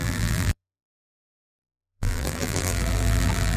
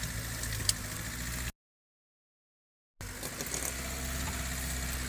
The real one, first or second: second